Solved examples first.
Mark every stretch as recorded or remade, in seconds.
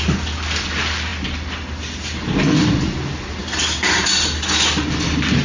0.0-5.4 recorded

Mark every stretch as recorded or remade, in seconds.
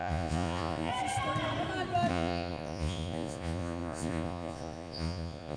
0.0-0.9 remade; 0.9-2.1 recorded; 2.1-5.6 remade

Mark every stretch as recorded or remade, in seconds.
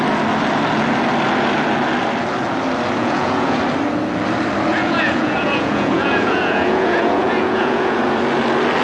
0.0-3.0 recorded; 3.0-3.6 remade; 3.6-4.7 recorded; 4.7-8.0 remade; 8.0-8.8 recorded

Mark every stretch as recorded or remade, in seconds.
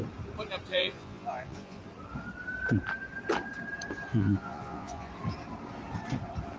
0.0-0.7 recorded; 0.7-1.8 remade; 1.8-4.1 recorded; 4.1-5.1 remade; 5.1-6.6 recorded